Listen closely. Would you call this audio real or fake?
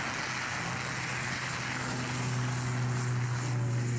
real